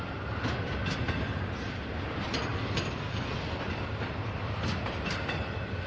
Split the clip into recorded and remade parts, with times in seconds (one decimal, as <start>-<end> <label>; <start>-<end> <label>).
0.0-5.9 remade